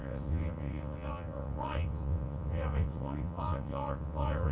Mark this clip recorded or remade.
remade